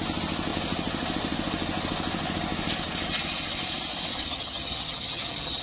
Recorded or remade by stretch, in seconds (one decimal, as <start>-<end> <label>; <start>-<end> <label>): 0.0-4.1 recorded; 4.1-5.6 remade